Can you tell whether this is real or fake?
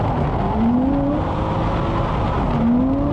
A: real